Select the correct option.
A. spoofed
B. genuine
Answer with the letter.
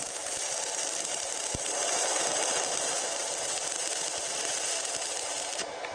A